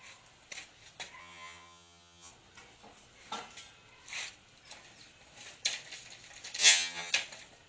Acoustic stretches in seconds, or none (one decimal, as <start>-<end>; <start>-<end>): 0.0-1.2; 2.3-6.6; 7.1-7.7